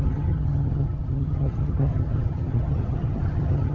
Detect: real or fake fake